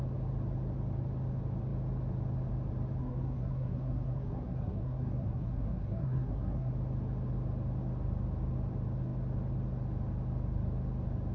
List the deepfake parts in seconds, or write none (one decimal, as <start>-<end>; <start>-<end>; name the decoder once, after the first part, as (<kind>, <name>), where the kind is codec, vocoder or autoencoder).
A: 3.0-6.7 (codec, SNAC)